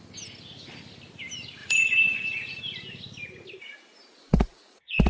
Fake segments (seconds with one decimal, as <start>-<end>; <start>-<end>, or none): 1.6-2.6; 4.3-5.1

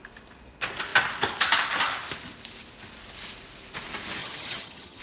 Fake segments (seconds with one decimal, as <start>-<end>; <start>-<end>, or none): 4.2-5.0

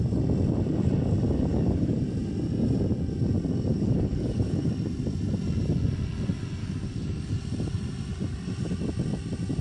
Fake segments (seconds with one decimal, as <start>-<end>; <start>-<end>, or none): 1.5-2.0; 3.7-4.7; 6.6-7.3

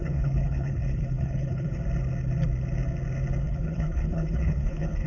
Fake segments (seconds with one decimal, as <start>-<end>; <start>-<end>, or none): 0.0-1.8; 3.4-5.1

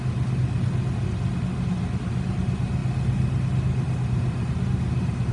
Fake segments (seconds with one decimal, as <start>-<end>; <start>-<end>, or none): none

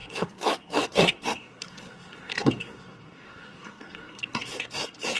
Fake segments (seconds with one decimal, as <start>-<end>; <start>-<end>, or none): 0.0-5.2

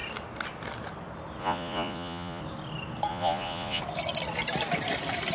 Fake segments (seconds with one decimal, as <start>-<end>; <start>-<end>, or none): 1.4-2.4; 3.1-3.8